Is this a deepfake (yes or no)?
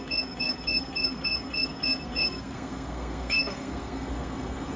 yes